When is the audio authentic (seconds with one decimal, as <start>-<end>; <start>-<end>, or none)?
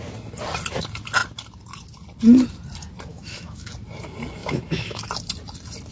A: 0.0-3.1; 3.7-4.4; 5.0-5.9